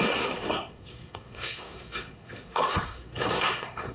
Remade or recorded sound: remade